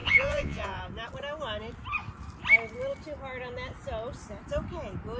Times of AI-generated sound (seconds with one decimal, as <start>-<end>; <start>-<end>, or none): 0.0-0.8